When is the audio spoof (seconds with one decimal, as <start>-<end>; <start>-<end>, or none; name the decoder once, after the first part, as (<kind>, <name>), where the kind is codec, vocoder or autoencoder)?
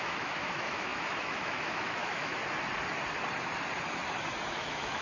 0.0-2.4 (autoencoder, DAC-VAE); 4.5-5.0